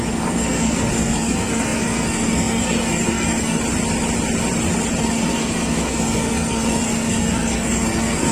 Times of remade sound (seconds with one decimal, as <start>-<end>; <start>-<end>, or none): 0.0-3.6; 5.0-8.3